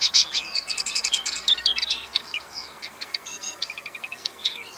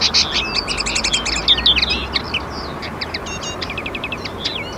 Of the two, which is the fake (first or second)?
first